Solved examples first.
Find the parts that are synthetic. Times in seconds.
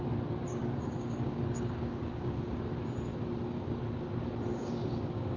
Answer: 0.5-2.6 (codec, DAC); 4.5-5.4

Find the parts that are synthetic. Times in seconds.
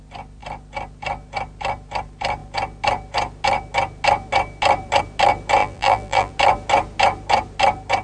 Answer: 5.6-6.3 (vocoder, BigVGAN v2)